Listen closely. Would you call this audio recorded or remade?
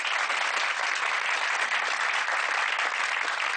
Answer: recorded